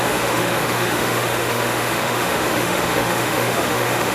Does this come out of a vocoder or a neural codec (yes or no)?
yes